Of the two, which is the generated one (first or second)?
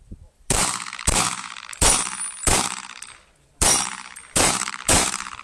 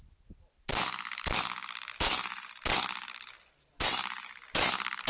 first